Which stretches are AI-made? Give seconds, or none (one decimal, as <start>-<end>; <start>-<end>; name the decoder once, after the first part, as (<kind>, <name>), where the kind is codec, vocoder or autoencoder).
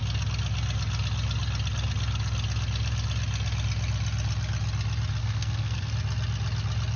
5.2-5.9 (codec, SNAC)